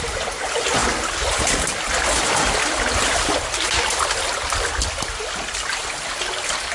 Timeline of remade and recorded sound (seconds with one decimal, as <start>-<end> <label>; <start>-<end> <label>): 0.0-6.7 recorded